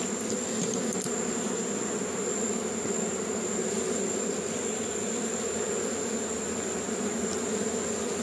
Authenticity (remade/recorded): recorded